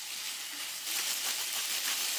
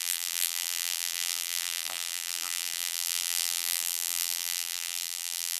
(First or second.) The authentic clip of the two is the first